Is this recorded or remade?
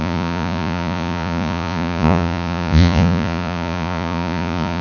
remade